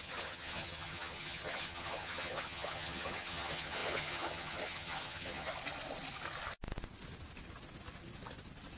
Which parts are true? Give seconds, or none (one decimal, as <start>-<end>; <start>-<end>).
5.5-8.8